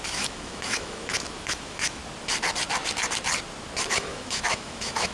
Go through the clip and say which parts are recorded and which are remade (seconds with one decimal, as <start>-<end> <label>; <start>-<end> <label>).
0.0-2.0 remade; 2.0-3.8 recorded; 3.8-5.1 remade